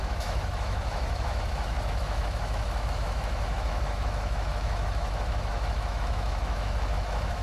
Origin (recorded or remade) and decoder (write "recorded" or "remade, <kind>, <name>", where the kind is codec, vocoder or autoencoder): remade, autoencoder, DAC-VAE